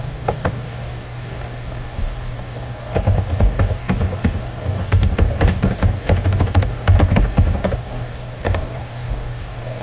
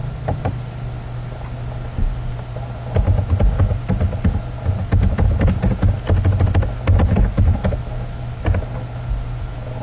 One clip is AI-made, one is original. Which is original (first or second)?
second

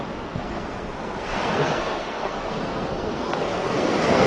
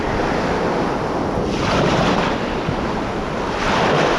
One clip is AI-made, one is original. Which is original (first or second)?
second